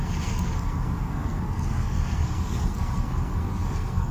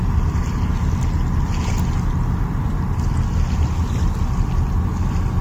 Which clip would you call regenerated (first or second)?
first